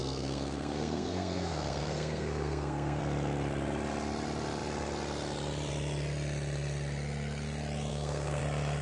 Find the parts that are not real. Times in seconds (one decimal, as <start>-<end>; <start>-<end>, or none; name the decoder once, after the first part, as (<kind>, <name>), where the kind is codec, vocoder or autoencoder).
0.0-3.0 (codec, SNAC); 7.9-8.4